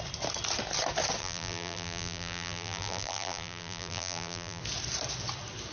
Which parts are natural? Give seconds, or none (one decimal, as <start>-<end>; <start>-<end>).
0.0-1.2; 4.6-5.7